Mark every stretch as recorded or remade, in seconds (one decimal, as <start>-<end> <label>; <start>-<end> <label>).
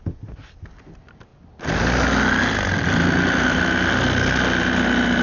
0.0-5.2 recorded